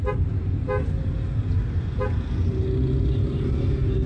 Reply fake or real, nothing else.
real